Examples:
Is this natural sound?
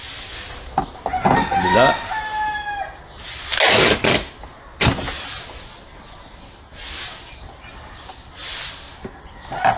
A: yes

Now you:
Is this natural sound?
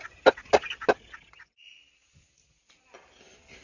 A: yes